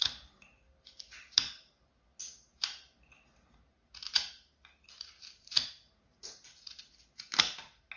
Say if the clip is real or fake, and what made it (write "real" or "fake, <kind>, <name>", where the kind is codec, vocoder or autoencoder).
real